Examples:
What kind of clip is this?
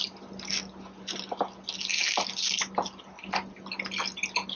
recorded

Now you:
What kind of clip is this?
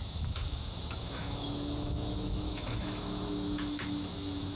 remade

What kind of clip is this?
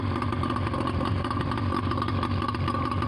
recorded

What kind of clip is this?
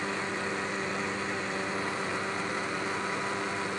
recorded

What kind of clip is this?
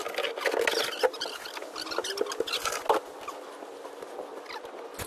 recorded